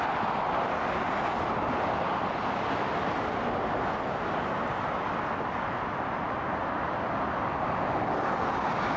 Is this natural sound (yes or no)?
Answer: yes